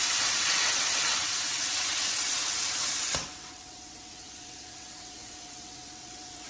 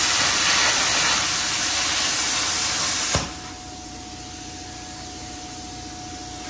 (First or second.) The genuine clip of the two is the second